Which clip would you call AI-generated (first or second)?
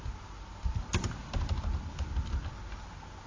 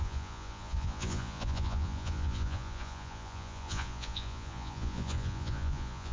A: second